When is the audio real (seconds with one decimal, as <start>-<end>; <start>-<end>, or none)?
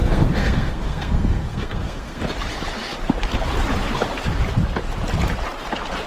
2.2-6.1